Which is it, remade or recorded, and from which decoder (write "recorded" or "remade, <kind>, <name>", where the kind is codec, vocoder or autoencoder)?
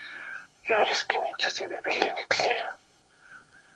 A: remade, codec, SNAC